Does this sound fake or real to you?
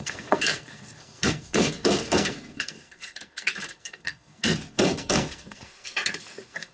fake